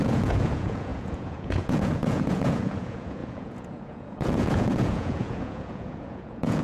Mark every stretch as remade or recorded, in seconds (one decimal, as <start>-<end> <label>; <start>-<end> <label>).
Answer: 0.0-6.6 remade